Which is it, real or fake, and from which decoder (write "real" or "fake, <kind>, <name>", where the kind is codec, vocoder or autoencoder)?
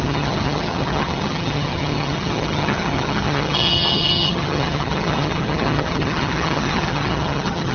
fake, vocoder, HiFi-GAN